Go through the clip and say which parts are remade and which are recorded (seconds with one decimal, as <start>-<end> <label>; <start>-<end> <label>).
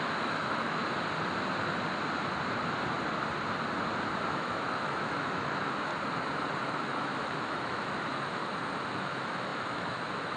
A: 0.0-0.8 remade; 0.8-4.3 recorded; 4.3-5.9 remade; 5.9-6.6 recorded; 6.6-8.4 remade; 8.4-8.9 recorded; 8.9-10.4 remade